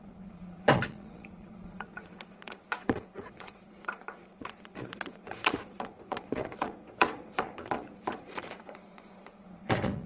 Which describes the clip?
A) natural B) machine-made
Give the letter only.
B